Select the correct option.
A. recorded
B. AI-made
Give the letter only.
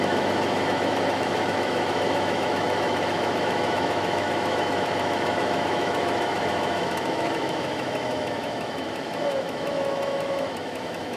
B